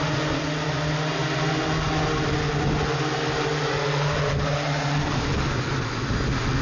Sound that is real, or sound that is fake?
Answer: real